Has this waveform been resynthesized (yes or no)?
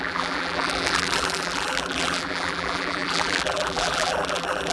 yes